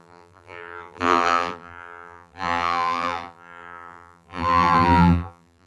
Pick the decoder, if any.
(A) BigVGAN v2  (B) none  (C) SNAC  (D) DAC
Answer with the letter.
A